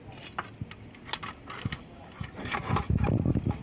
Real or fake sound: real